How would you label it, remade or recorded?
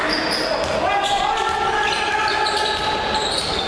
recorded